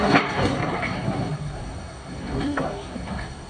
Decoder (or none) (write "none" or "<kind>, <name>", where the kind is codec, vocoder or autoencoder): codec, SNAC